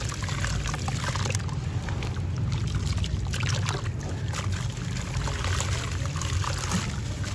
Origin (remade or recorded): recorded